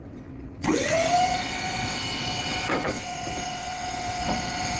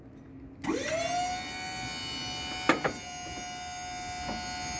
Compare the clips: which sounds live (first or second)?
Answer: second